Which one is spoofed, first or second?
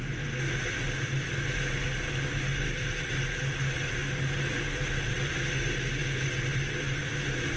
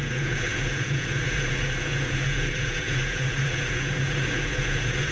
second